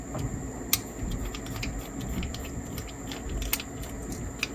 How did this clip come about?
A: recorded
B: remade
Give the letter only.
A